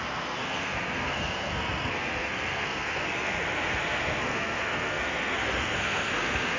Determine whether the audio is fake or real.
fake